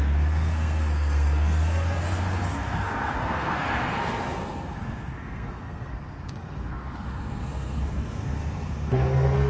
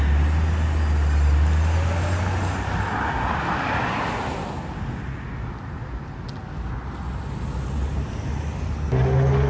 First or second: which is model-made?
first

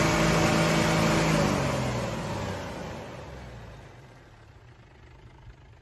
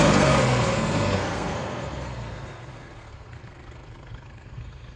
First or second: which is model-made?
second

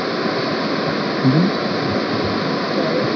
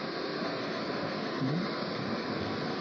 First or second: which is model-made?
second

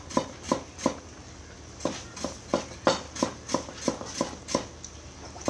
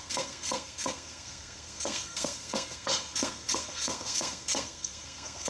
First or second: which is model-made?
second